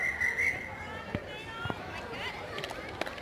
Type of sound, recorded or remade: remade